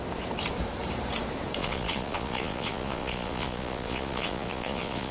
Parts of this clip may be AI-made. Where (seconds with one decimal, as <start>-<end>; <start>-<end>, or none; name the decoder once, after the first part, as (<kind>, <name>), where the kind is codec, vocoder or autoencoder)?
1.6-5.1 (vocoder, Vocos)